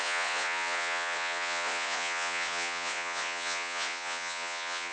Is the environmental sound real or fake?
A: fake